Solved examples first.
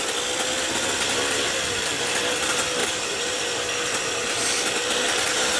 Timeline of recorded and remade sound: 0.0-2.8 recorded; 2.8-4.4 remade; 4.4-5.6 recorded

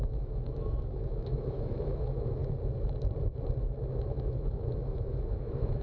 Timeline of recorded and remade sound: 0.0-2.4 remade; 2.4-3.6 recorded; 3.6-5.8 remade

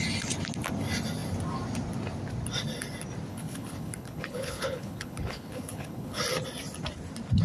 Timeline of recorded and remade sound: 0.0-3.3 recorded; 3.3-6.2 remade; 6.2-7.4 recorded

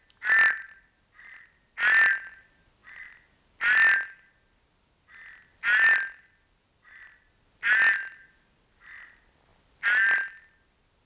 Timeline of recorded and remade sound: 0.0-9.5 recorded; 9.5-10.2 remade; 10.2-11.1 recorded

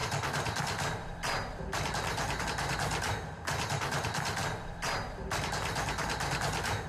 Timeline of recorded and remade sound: 0.0-6.9 recorded

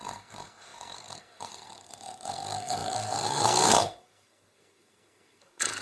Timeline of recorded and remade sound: 0.0-5.8 remade